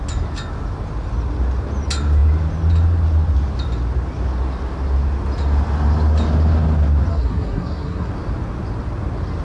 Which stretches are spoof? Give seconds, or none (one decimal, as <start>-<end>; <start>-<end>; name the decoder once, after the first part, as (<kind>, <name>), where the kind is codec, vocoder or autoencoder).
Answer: 7.1-8.1 (codec, SNAC)